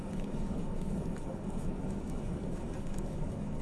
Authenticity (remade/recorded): remade